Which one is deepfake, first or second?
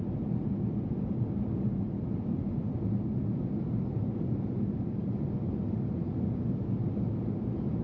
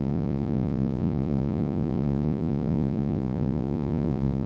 second